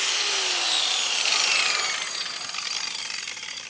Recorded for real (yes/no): yes